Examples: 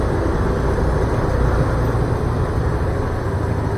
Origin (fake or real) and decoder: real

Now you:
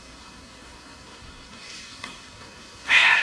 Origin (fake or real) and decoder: fake, codec, SNAC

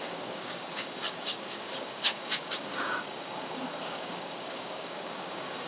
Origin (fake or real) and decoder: fake, codec, DAC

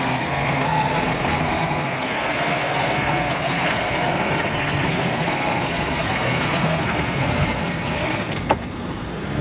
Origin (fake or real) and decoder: fake, codec, SNAC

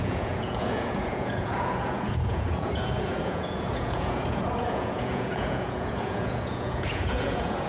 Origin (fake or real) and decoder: fake, vocoder, Vocos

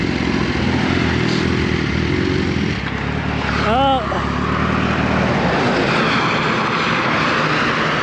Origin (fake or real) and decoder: real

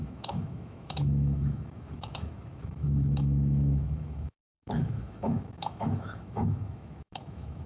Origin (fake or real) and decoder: fake, autoencoder, DAC-VAE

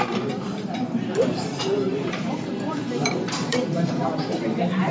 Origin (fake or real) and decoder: fake, vocoder, BigVGAN v2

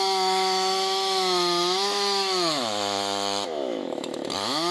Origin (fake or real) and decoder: fake, autoencoder, DAC-VAE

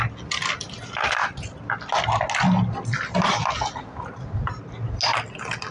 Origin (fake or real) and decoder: real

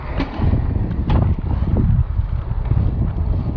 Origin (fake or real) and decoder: real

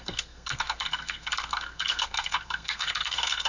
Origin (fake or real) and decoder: fake, codec, SNAC